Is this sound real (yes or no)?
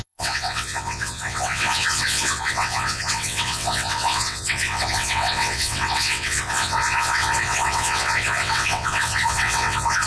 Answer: no